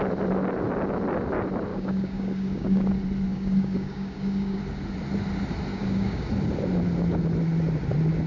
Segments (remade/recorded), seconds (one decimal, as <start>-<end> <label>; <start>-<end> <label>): 0.0-1.7 recorded; 1.7-2.9 remade; 2.9-3.3 recorded; 3.3-4.6 remade; 4.6-5.7 recorded; 5.7-6.3 remade; 6.3-8.3 recorded